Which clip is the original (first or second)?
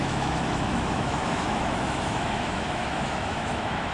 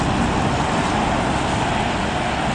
second